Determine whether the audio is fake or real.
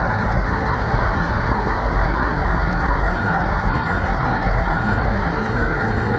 fake